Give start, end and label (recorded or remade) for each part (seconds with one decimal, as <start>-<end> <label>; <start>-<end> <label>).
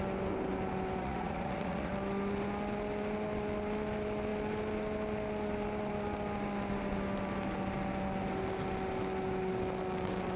0.0-1.0 recorded; 1.0-1.9 remade; 1.9-10.4 recorded